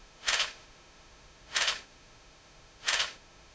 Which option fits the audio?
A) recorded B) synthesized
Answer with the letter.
B